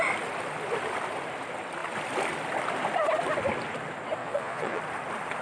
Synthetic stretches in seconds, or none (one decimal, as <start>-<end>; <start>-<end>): 4.2-4.8